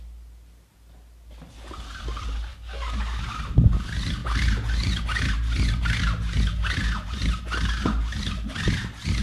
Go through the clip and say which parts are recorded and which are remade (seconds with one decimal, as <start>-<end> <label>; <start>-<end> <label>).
0.0-2.5 recorded; 2.5-3.2 remade; 3.2-9.2 recorded